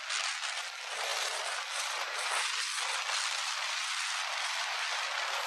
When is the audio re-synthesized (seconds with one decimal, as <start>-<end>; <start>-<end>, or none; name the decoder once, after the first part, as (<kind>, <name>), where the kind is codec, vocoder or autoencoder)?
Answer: none